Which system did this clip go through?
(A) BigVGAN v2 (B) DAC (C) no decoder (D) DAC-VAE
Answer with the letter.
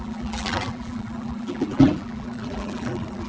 A